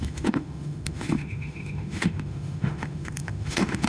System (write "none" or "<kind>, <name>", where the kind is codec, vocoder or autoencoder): autoencoder, DAC-VAE